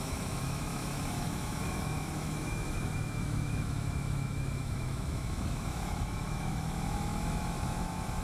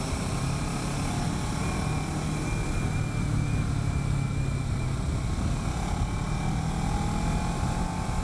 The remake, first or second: first